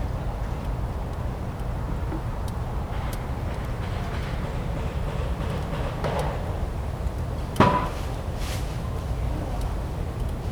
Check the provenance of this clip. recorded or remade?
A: recorded